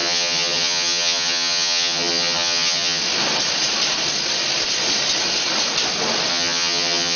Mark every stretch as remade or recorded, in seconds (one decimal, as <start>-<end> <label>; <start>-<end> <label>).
0.0-3.0 remade; 3.0-6.3 recorded; 6.3-7.2 remade